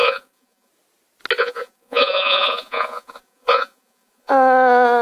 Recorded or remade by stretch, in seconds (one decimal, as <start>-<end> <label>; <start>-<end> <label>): 0.0-0.7 remade; 0.7-1.4 recorded; 1.4-4.3 remade; 4.3-5.0 recorded